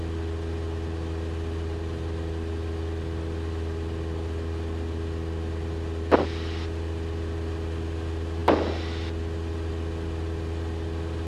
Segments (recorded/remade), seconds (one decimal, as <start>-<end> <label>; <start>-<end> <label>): 0.0-11.3 recorded